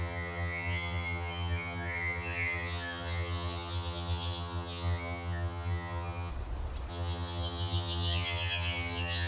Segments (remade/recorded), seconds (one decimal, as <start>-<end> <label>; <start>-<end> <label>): 0.0-6.3 remade; 6.3-6.9 recorded; 6.9-9.3 remade